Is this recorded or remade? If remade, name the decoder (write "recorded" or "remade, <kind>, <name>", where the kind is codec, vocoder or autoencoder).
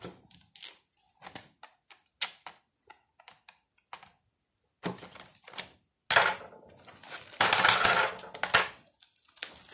recorded